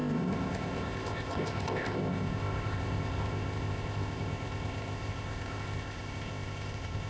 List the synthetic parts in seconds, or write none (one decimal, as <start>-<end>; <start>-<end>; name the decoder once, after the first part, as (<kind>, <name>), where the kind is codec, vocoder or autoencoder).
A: 0.0-7.1 (codec, ZipCodec)

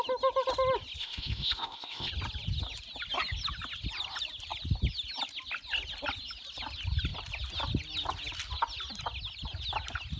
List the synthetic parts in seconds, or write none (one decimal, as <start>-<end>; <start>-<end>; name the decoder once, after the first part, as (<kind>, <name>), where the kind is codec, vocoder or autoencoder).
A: 1.0-2.1 (codec, ZipCodec)